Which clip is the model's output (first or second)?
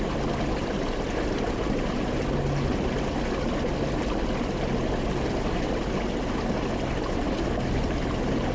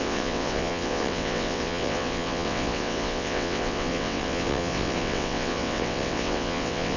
second